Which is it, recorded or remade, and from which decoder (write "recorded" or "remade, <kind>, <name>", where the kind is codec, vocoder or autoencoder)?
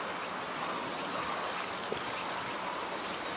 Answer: recorded